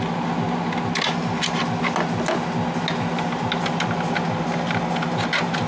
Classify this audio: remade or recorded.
recorded